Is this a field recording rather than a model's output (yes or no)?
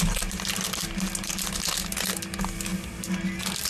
yes